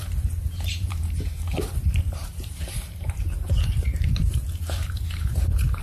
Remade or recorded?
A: remade